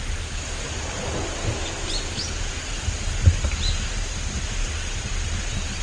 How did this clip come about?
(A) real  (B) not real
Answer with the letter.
A